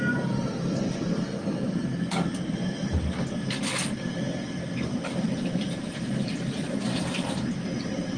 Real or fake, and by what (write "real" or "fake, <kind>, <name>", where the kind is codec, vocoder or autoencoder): real